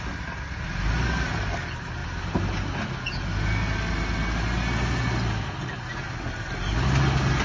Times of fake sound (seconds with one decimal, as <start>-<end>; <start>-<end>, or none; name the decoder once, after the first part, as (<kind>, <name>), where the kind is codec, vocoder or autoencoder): none